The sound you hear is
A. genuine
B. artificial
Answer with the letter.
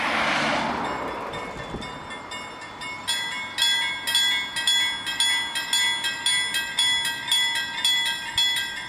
A